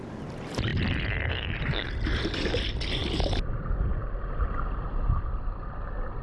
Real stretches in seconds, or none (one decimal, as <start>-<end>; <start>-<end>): 0.0-6.2